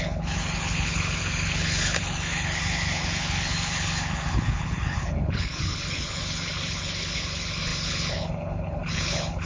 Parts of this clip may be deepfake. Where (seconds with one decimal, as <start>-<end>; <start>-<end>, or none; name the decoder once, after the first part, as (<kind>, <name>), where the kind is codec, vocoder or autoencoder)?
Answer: 0.0-9.5 (codec, HILCodec)